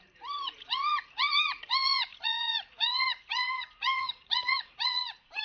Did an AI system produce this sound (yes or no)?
yes